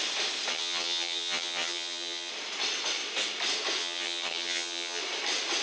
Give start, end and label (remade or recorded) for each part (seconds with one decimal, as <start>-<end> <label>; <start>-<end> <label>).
0.0-0.5 recorded; 0.5-2.3 remade; 2.3-3.8 recorded; 3.8-5.0 remade; 5.0-5.6 recorded